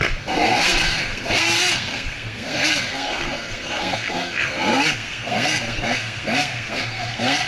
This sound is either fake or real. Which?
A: fake